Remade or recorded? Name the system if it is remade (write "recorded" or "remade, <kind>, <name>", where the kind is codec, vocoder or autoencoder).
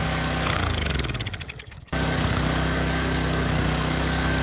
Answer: remade, codec, DAC